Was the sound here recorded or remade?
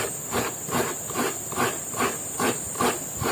recorded